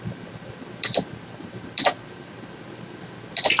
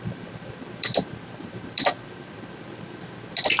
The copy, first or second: second